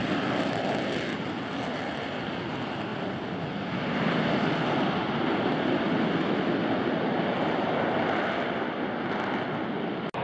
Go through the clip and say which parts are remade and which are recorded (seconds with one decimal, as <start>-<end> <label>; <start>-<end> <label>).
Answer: 0.0-10.2 recorded